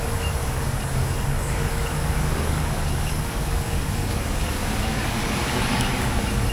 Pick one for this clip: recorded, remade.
remade